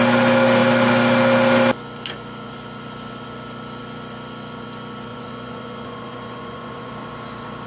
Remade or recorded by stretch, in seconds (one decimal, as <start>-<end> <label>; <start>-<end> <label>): 0.0-5.1 recorded; 5.1-6.9 remade; 6.9-7.7 recorded